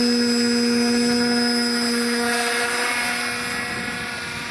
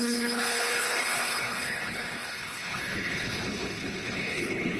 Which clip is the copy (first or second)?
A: second